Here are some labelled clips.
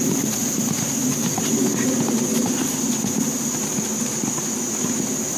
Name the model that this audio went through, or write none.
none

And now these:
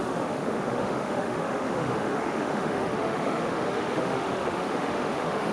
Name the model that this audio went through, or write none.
autoencoder, DAC-VAE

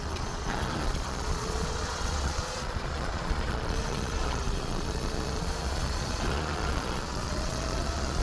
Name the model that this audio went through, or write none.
vocoder, Vocos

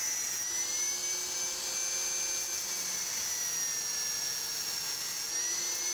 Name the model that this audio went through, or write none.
none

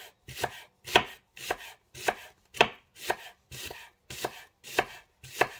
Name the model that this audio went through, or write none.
vocoder, BigVGAN v2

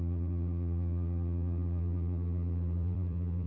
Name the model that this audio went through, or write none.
vocoder, BigVGAN v2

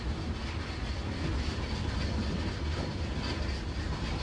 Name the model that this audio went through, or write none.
none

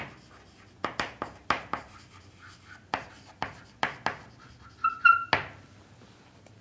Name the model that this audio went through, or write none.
none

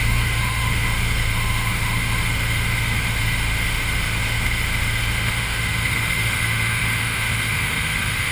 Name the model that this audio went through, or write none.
autoencoder, DAC-VAE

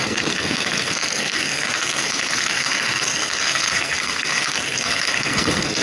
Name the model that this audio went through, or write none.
codec, SNAC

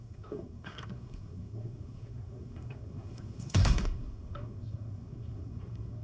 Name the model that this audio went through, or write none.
codec, SNAC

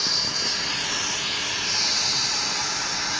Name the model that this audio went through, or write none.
none